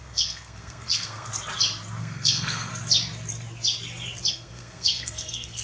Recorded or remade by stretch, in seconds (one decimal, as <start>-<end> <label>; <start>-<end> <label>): 0.0-1.3 remade; 1.3-2.0 recorded; 2.0-2.7 remade; 2.7-4.3 recorded; 4.3-5.6 remade